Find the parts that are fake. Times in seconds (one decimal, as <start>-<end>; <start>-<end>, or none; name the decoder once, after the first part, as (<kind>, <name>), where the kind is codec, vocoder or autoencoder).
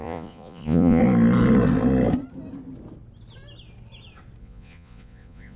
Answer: 0.0-1.0 (vocoder, Vocos); 4.4-5.6